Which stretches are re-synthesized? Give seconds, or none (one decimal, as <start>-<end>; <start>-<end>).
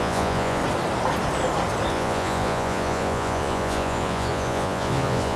0.0-0.6; 1.9-5.4